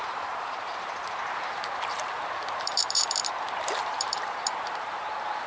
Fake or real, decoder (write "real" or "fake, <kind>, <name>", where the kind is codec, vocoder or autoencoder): fake, vocoder, BigVGAN v2